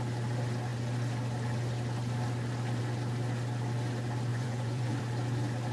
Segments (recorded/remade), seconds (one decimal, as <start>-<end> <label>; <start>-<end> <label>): 0.0-4.3 recorded; 4.3-5.0 remade; 5.0-5.7 recorded